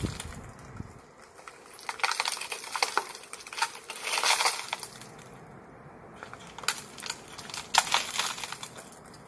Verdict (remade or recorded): recorded